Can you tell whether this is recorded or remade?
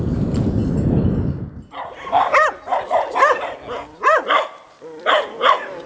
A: recorded